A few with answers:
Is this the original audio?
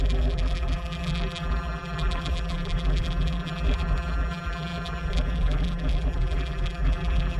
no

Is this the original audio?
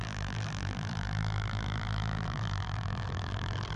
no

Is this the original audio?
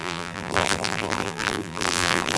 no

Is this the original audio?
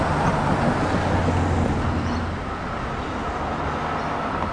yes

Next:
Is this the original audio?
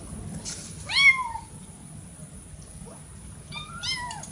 yes